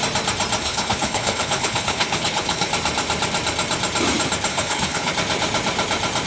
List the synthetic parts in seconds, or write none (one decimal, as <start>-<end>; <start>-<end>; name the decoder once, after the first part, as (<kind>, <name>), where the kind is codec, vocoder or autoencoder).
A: 0.6-2.7 (codec, HILCodec); 4.5-5.1